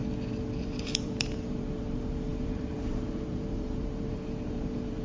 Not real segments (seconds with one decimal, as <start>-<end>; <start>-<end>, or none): 0.6-5.0

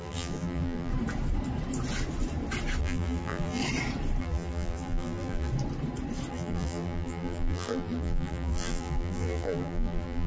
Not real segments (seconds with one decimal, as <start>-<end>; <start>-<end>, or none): 0.0-0.9; 2.8-3.6; 4.2-5.5; 6.3-10.3